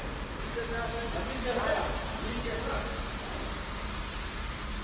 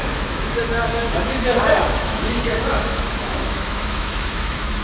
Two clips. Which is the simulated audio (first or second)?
second